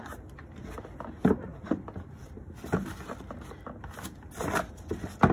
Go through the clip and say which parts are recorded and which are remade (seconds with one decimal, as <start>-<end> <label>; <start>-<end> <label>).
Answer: 0.0-5.3 recorded